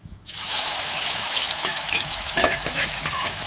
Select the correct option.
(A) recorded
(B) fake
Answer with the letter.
B